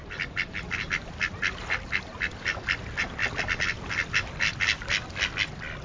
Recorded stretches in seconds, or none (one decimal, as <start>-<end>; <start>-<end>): 0.0-5.8